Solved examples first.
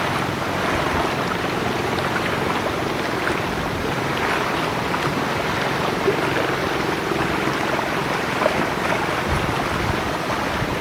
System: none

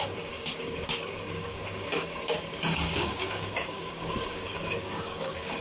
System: codec, DAC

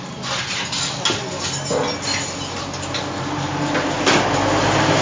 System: none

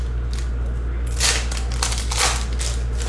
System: none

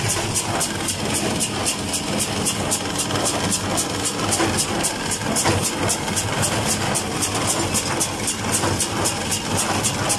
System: none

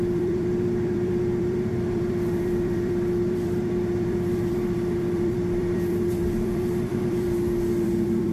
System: vocoder, BigVGAN v2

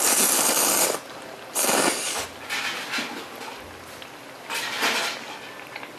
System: none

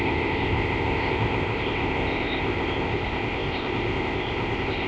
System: codec, ZipCodec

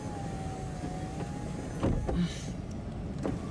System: none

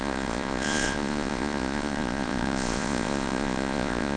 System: vocoder, Vocos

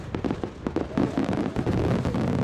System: none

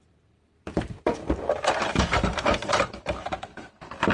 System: vocoder, BigVGAN v2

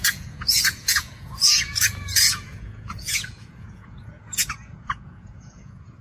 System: vocoder, Vocos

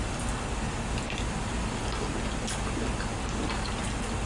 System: none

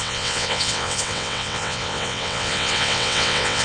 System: vocoder, WaveNeXt